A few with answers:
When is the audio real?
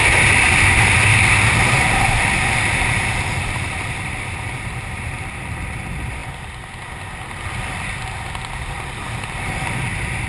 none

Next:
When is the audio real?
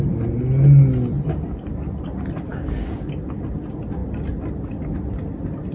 0.0-2.5; 3.2-5.7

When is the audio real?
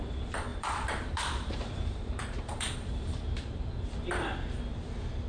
0.0-0.5; 3.7-5.3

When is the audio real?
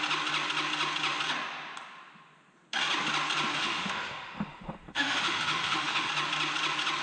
0.0-3.5; 6.1-7.0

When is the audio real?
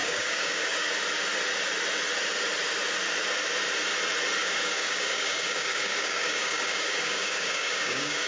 0.9-4.4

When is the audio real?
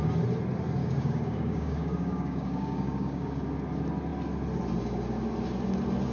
0.0-0.8; 3.3-6.1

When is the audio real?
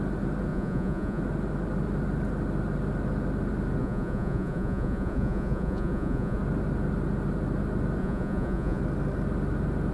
0.0-0.5; 1.2-3.8; 6.4-8.0; 8.8-9.9